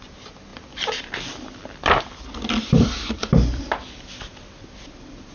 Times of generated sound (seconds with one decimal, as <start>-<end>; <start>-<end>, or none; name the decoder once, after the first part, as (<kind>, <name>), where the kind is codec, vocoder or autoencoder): none